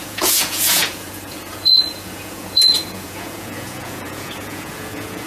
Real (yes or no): no